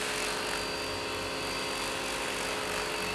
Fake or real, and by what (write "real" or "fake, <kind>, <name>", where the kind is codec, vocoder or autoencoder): real